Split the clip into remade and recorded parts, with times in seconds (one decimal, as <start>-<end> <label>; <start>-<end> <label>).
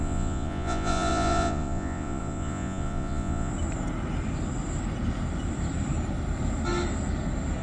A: 0.0-3.5 remade; 3.5-7.6 recorded